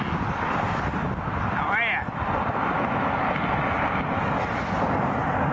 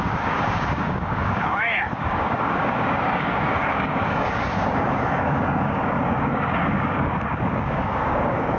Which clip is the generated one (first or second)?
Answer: second